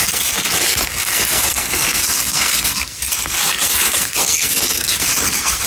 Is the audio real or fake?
fake